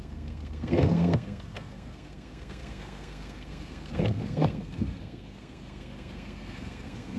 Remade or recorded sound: remade